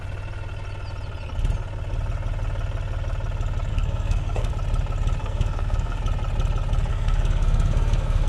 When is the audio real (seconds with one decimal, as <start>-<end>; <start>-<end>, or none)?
0.0-3.7; 4.5-5.2; 6.0-6.9

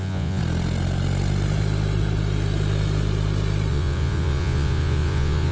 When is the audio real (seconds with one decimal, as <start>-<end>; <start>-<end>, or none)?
0.4-3.7

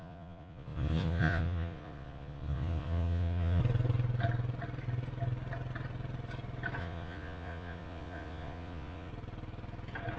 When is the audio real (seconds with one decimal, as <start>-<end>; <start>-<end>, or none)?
3.6-6.8; 9.1-10.2